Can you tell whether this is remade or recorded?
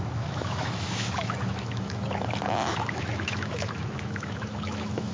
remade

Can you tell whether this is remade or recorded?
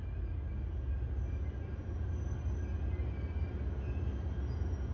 recorded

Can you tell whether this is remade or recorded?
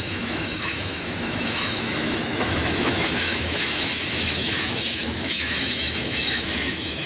remade